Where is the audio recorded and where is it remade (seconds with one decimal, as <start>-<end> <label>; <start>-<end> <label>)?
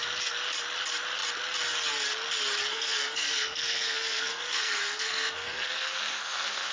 0.0-2.7 recorded; 2.7-6.7 remade